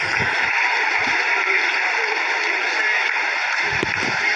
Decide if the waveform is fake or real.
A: fake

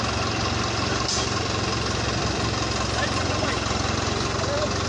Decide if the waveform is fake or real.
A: real